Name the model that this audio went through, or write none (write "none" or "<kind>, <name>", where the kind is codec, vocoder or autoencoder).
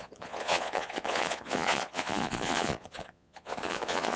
vocoder, Vocos